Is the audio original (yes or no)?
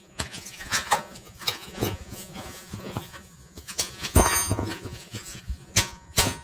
no